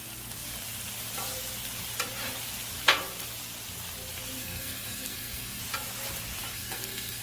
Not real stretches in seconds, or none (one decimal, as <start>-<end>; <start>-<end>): 4.4-5.6; 6.5-7.2